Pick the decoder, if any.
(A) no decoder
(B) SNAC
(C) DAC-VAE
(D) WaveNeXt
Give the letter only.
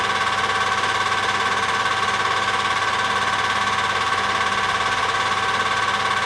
A